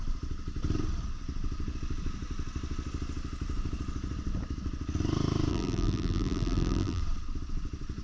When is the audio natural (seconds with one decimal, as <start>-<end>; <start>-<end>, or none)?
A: 0.0-5.5; 7.0-8.0